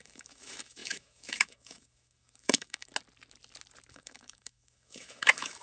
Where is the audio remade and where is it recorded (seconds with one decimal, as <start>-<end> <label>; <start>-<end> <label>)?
0.0-2.9 remade; 2.9-3.9 recorded; 3.9-5.6 remade